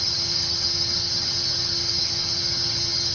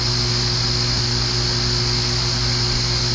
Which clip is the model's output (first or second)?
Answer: first